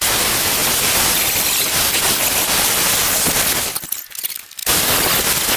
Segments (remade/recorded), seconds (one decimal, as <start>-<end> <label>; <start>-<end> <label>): 0.0-5.6 recorded